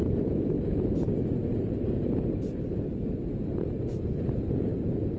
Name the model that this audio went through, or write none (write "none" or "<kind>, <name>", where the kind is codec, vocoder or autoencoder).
none